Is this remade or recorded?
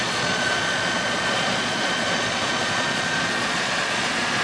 remade